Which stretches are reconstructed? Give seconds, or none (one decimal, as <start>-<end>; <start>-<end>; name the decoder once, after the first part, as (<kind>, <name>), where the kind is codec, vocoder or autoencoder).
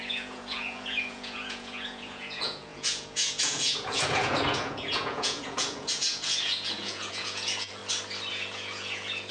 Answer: 0.0-7.8 (vocoder, Vocos); 8.3-9.3